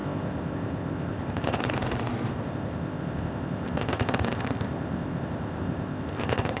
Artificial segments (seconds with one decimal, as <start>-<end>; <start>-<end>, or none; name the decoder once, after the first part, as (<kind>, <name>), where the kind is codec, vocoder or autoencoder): 0.0-1.6 (codec, ZipCodec); 2.3-6.6